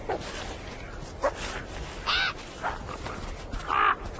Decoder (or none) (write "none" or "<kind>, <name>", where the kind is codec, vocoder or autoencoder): none